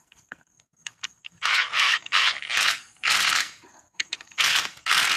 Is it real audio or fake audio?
fake